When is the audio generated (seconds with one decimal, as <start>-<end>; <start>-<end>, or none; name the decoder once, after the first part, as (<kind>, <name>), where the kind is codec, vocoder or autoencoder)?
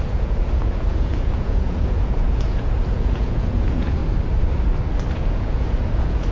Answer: 0.0-4.0 (vocoder, Vocos); 5.1-6.3